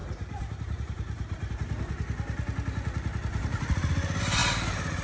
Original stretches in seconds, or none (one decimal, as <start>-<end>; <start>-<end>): 1.5-3.3; 3.9-4.4